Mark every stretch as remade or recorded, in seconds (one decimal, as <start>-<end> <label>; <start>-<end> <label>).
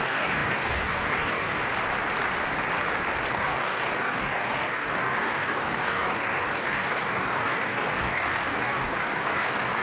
0.0-1.6 remade; 1.6-3.3 recorded; 3.3-9.8 remade